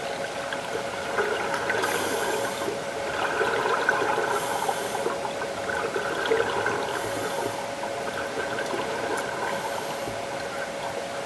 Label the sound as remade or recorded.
recorded